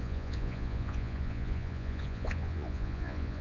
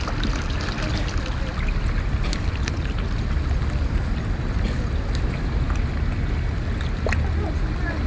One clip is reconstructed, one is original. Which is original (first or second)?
second